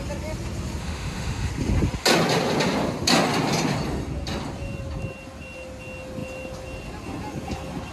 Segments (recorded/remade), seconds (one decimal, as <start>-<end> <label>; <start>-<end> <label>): 0.0-0.8 recorded; 0.8-1.5 remade; 1.5-7.9 recorded